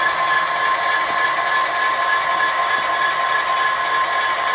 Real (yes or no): yes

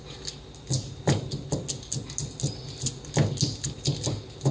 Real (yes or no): yes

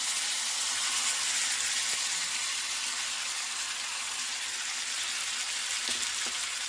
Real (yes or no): yes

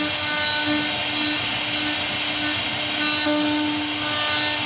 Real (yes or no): yes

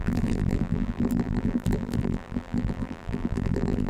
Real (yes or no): no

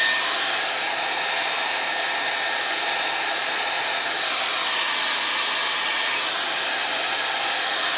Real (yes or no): yes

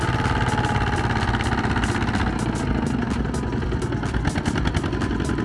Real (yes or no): yes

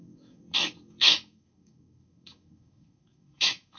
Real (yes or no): no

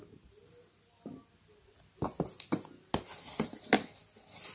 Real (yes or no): yes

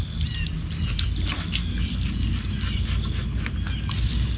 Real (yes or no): yes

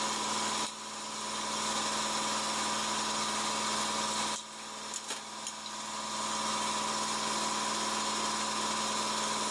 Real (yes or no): yes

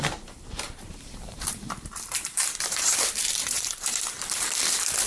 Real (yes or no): no